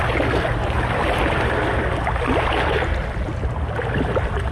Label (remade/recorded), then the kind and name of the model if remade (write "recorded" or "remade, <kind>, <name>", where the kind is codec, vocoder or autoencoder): recorded